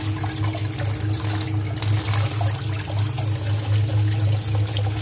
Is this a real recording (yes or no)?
yes